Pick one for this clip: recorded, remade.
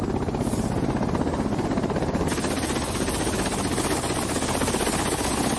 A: recorded